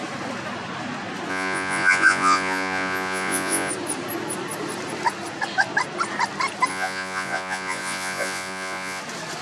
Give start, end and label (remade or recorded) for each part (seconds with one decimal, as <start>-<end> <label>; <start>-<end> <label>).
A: 0.0-1.3 recorded; 1.3-3.7 remade; 3.7-6.7 recorded; 6.7-9.0 remade; 9.0-9.4 recorded